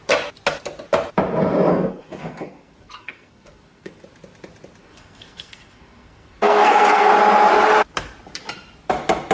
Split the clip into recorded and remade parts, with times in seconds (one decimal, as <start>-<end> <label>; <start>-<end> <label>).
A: 0.0-1.7 recorded; 1.7-4.0 remade; 4.0-4.8 recorded; 4.8-7.1 remade; 7.1-9.3 recorded